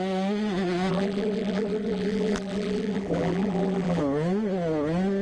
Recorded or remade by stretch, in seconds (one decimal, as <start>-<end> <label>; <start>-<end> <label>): 0.0-0.9 recorded; 0.9-4.0 remade; 4.0-5.2 recorded